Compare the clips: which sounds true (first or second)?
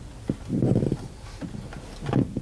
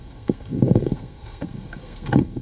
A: first